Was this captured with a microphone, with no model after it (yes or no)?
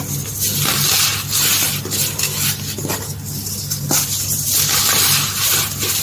yes